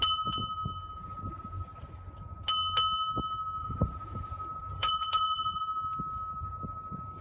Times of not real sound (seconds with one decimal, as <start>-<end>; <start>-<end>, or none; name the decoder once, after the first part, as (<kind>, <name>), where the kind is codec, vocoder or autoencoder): 3.6-5.6 (vocoder, Vocos)